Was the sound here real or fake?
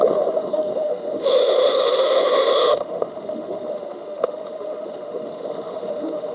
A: fake